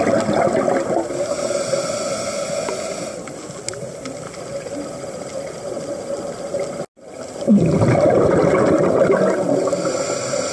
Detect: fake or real real